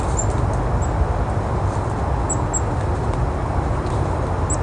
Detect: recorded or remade recorded